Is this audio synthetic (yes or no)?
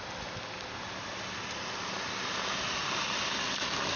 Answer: no